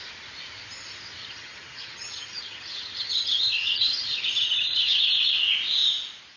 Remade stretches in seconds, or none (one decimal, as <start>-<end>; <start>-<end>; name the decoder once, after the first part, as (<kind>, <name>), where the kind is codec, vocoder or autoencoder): 1.2-5.0 (vocoder, HiFi-GAN)